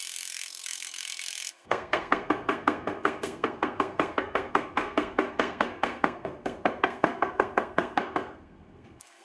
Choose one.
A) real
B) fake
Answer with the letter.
B